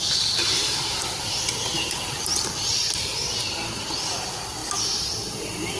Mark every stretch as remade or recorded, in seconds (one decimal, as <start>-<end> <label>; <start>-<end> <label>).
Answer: 0.0-0.4 recorded; 0.4-3.1 remade; 3.1-4.6 recorded; 4.6-5.1 remade; 5.1-5.8 recorded